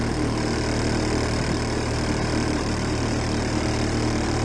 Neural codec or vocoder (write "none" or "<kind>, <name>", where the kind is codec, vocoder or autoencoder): none